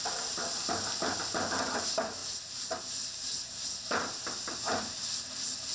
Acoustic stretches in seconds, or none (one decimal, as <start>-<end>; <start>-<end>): 0.0-5.7